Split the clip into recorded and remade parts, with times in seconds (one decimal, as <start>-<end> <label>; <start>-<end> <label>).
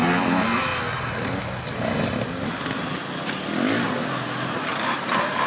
0.0-5.5 recorded